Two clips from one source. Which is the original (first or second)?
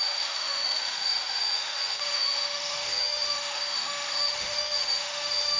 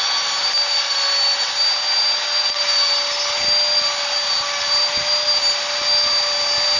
second